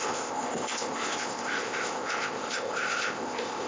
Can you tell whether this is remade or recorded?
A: remade